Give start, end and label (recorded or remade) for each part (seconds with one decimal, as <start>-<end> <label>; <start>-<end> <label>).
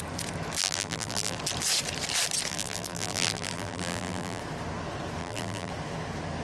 0.0-0.6 recorded; 0.6-1.4 remade; 1.4-2.5 recorded; 2.5-4.4 remade; 4.4-5.2 recorded; 5.2-5.7 remade; 5.7-6.4 recorded